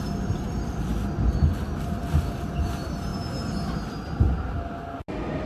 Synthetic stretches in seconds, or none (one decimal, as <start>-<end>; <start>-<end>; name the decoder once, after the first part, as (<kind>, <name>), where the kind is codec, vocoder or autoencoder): none